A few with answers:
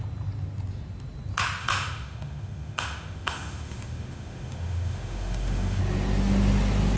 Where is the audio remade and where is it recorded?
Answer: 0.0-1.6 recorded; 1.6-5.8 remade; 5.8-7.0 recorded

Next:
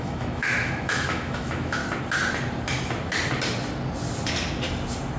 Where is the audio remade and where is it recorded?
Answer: 0.0-1.8 remade; 1.8-5.2 recorded

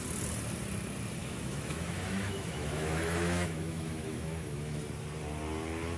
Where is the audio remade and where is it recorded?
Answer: 0.0-1.2 recorded; 1.2-4.8 remade; 4.8-6.0 recorded

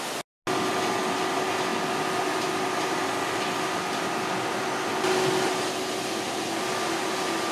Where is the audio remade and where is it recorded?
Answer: 0.0-7.5 recorded

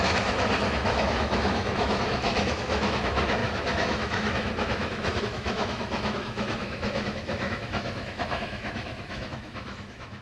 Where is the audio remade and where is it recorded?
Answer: 0.0-10.2 remade

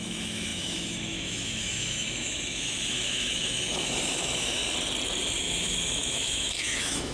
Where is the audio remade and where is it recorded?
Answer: 0.0-4.6 remade; 4.6-5.4 recorded; 5.4-7.1 remade

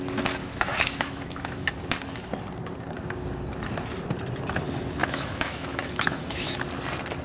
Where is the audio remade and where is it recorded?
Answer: 0.0-0.4 recorded; 0.4-1.7 remade; 1.7-5.0 recorded; 5.0-6.6 remade; 6.6-7.2 recorded